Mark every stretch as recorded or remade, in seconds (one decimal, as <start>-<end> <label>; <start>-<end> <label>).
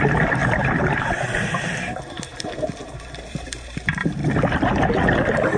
0.0-0.4 remade; 0.4-1.0 recorded; 1.0-4.2 remade; 4.2-5.6 recorded